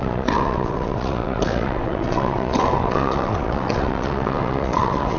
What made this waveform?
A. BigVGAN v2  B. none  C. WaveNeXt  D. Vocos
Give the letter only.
C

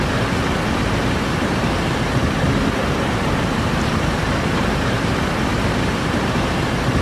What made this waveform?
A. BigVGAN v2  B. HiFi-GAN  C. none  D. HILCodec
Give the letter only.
A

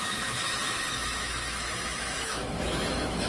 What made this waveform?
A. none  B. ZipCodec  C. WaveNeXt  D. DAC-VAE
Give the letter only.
D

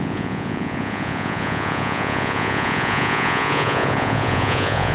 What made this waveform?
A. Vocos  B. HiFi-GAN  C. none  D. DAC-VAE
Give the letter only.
A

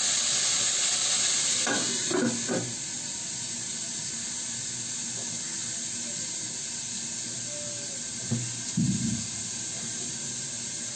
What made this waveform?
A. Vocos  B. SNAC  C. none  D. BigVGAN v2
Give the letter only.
C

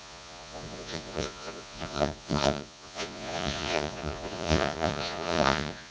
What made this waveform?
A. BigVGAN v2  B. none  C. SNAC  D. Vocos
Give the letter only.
D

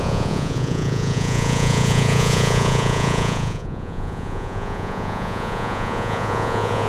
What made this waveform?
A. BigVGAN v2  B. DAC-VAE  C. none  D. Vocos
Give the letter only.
D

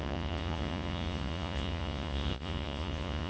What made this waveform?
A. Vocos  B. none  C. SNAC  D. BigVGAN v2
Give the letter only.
A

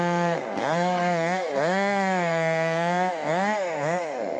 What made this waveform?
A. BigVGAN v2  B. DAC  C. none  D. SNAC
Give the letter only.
D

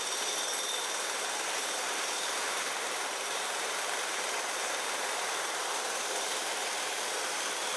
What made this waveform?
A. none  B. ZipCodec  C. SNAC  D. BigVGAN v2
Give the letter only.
D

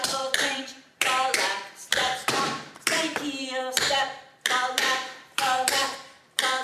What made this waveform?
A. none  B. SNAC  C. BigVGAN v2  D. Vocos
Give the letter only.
C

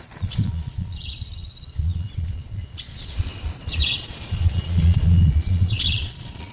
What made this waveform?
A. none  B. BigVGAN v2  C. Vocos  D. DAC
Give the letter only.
C